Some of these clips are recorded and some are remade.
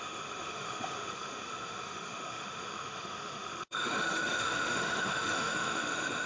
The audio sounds remade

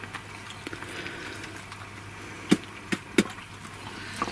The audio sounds recorded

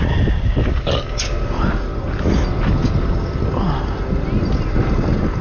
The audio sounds recorded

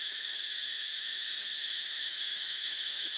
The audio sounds remade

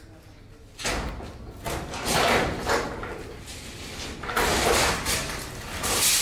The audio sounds recorded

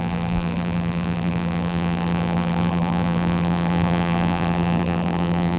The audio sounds remade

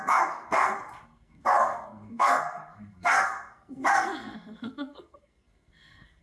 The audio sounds remade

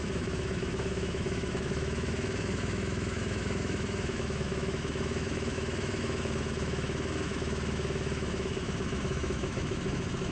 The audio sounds remade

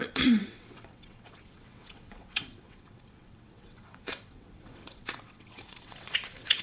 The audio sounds remade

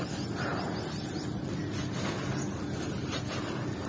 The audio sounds recorded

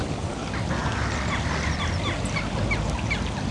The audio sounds recorded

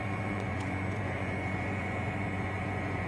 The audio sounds remade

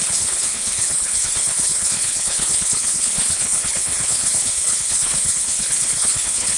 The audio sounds remade